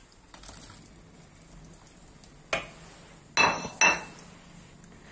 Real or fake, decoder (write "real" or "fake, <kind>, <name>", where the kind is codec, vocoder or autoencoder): real